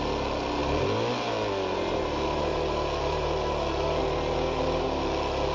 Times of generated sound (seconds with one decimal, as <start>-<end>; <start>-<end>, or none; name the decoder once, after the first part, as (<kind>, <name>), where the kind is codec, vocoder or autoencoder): none

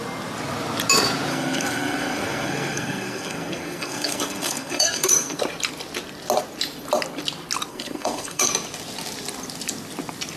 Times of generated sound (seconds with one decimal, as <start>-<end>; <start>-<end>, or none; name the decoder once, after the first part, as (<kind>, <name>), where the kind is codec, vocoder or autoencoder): 1.3-5.4 (codec, SNAC); 7.7-8.5

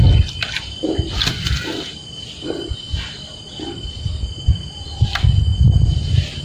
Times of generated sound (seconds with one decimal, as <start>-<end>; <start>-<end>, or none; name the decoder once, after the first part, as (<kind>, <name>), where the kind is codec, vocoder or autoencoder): none

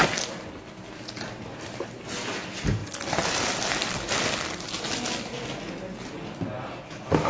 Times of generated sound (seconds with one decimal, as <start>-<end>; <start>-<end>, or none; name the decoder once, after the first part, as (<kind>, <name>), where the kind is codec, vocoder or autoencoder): none

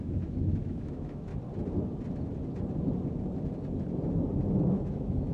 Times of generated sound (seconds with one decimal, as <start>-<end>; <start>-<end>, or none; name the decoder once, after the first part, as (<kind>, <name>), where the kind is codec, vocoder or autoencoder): 0.0-1.3 (autoencoder, DAC-VAE); 4.5-5.3

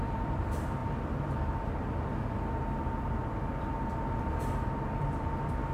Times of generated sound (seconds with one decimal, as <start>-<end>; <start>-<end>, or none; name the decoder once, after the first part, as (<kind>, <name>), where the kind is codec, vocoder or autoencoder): 0.0-0.8 (vocoder, BigVGAN v2); 4.2-5.7

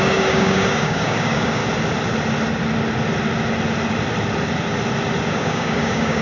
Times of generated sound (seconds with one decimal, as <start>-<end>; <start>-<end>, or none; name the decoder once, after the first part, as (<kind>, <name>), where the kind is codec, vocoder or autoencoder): 0.0-1.6 (codec, DAC); 5.3-6.2